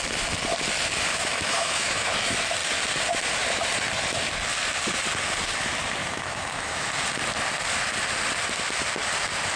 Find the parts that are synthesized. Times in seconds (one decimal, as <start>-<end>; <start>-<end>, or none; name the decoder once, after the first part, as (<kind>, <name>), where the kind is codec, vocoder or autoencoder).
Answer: 1.1-2.1 (autoencoder, DAC-VAE); 6.0-6.9